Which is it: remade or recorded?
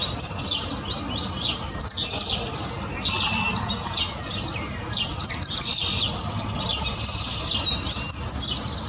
recorded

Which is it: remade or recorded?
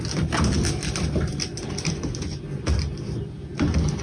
recorded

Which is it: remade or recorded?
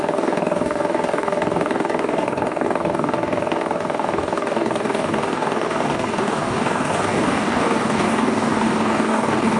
remade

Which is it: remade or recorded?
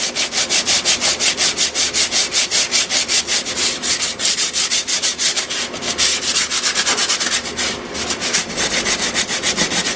recorded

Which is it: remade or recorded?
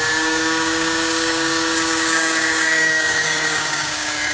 remade